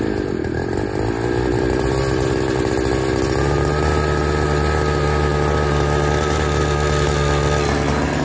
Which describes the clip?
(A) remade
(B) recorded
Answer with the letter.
B